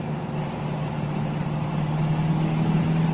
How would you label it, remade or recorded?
recorded